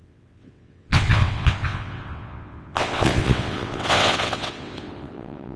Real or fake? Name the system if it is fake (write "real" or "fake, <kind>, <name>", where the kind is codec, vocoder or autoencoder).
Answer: fake, vocoder, WaveNeXt